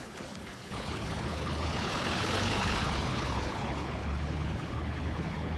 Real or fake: fake